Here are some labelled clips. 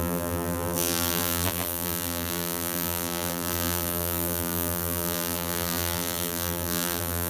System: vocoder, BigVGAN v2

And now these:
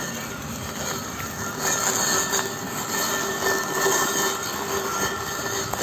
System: none